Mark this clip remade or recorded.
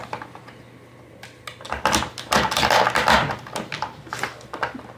recorded